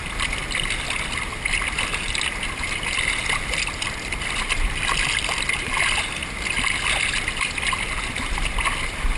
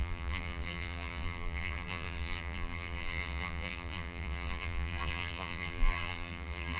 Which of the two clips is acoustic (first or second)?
first